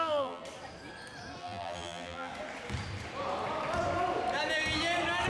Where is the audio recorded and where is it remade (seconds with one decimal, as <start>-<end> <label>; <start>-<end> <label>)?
0.0-0.4 remade; 0.4-1.4 recorded; 1.4-2.3 remade; 2.3-5.3 recorded